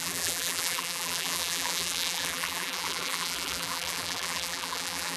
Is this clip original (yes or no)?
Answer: no